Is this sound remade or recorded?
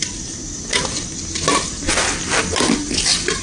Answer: recorded